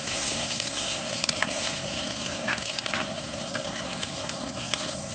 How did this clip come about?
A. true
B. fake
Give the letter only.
B